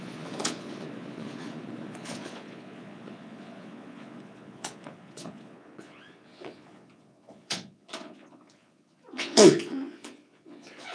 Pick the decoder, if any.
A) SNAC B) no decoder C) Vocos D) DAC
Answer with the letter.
C